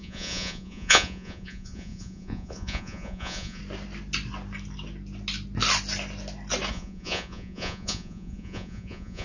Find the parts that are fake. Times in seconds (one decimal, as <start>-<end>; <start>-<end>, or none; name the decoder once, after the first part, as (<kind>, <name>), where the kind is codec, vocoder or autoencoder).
0.0-3.6 (vocoder, Vocos); 6.7-9.2